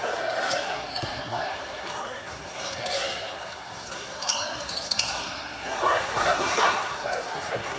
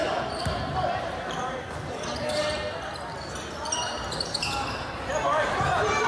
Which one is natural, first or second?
second